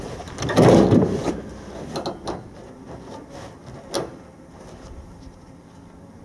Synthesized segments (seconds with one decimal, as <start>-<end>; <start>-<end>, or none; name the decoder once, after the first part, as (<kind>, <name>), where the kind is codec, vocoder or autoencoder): none

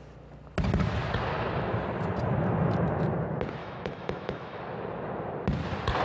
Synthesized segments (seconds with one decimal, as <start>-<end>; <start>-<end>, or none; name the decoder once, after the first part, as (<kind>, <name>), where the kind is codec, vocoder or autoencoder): 3.6-4.6 (autoencoder, DAC-VAE)

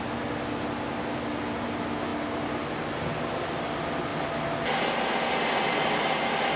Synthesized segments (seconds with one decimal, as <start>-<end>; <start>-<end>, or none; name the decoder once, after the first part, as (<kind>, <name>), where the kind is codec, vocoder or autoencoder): none

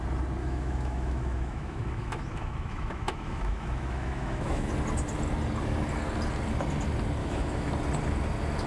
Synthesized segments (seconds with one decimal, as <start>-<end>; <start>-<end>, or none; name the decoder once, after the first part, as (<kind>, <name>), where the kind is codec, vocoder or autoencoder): 0.4-4.7 (autoencoder, DAC-VAE); 7.2-7.7

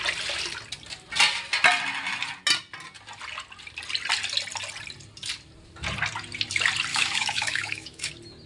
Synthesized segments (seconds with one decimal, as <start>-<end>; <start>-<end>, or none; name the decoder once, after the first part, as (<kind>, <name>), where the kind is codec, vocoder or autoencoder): 6.9-8.1 (autoencoder, DAC-VAE)

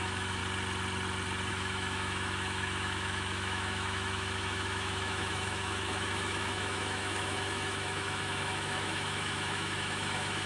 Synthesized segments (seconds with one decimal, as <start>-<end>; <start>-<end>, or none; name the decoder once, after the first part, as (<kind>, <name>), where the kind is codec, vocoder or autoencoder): 0.0-0.4 (autoencoder, DAC-VAE); 1.5-10.5

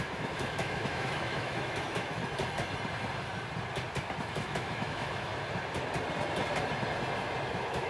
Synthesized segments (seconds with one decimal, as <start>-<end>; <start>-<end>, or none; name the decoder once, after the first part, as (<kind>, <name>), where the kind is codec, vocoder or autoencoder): 0.0-2.2 (autoencoder, DAC-VAE); 4.2-5.3; 7.5-7.9